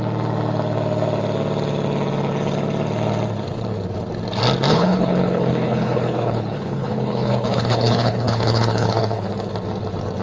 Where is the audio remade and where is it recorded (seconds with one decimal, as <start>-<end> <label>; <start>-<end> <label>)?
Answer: 0.0-4.7 recorded; 4.7-9.3 remade; 9.3-10.2 recorded